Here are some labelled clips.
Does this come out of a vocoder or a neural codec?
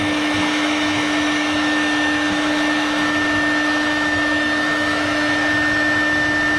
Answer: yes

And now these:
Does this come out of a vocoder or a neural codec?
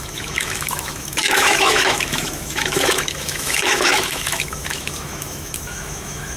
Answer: yes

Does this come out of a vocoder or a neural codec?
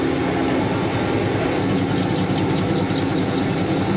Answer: no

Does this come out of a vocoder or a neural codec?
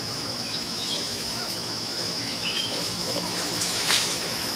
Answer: yes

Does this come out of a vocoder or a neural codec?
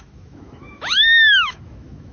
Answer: yes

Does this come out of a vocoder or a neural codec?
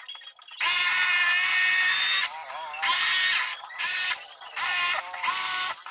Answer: no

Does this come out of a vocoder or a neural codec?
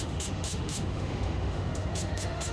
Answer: yes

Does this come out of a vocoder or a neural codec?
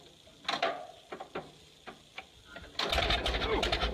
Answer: no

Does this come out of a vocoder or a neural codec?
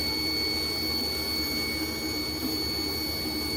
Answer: no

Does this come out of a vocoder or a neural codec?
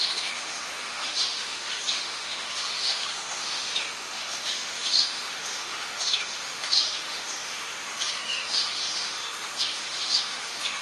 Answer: yes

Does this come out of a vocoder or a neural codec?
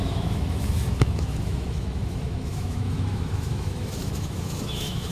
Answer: yes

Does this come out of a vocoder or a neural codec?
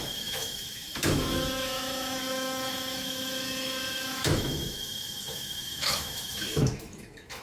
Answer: yes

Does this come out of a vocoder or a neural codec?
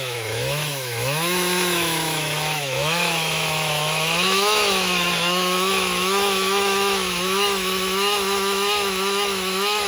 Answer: yes